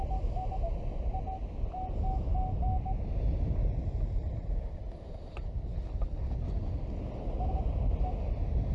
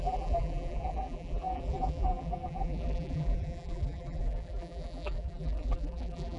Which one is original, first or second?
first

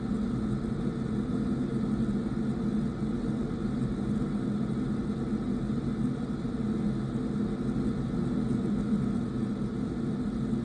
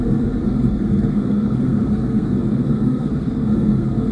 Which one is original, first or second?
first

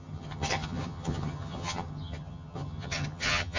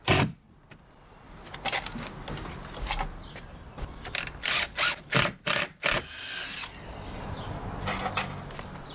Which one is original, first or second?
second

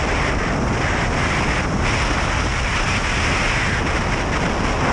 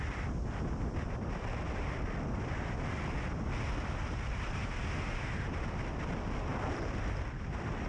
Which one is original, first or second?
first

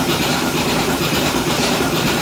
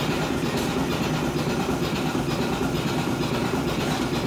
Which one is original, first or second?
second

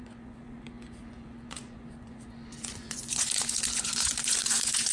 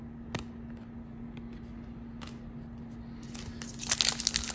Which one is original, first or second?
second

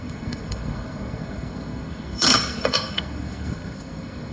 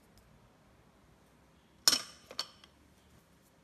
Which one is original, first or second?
second